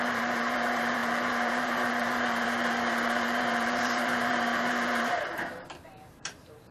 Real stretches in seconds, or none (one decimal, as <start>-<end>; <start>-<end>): none